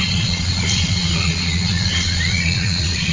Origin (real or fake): fake